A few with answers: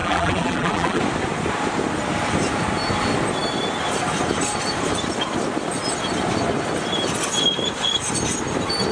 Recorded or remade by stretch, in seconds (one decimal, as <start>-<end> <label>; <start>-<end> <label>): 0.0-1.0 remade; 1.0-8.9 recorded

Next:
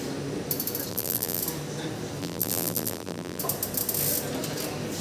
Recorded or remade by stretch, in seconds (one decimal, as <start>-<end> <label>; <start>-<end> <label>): 0.0-0.9 recorded; 0.9-1.4 remade; 1.4-2.2 recorded; 2.2-3.4 remade; 3.4-5.0 recorded

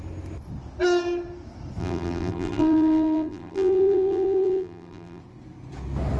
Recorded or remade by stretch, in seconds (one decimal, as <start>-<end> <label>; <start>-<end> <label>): 0.0-1.8 recorded; 1.8-5.2 remade; 5.2-6.2 recorded

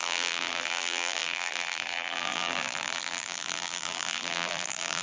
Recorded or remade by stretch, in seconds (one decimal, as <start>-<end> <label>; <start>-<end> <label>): 0.0-5.0 remade

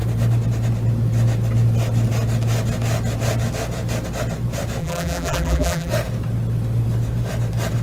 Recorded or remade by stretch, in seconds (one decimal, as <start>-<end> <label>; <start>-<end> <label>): 0.0-4.8 recorded; 4.8-5.9 remade; 5.9-7.8 recorded

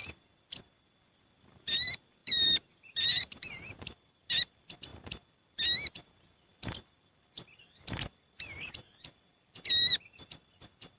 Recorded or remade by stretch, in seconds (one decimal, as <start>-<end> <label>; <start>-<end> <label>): 0.0-2.2 recorded; 2.2-4.3 remade; 4.3-11.0 recorded